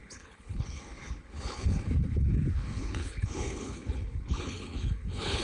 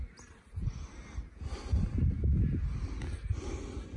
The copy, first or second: first